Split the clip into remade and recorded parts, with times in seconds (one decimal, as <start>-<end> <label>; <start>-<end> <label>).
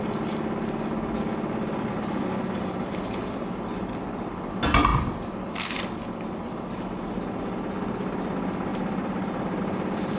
0.0-8.7 recorded; 8.7-9.6 remade; 9.6-10.2 recorded